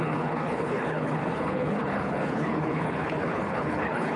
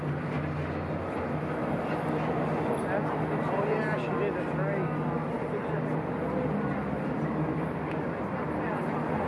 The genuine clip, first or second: second